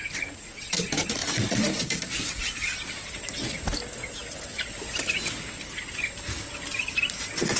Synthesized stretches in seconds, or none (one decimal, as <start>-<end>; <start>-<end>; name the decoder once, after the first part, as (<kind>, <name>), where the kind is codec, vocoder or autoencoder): 0.0-0.6 (vocoder, Vocos); 1.2-1.8